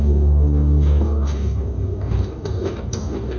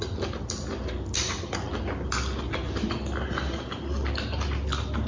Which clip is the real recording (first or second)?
second